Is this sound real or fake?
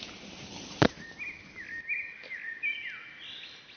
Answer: real